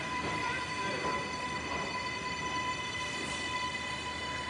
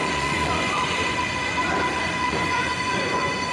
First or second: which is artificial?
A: second